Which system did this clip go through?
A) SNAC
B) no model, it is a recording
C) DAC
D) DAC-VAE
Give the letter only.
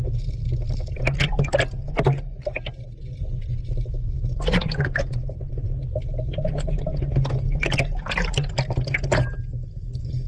B